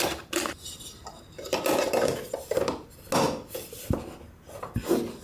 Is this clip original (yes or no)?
yes